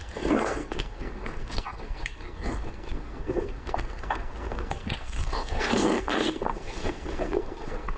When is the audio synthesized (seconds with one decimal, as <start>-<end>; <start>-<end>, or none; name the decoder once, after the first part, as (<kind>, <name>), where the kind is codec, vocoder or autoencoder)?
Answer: 0.0-8.0 (codec, SNAC)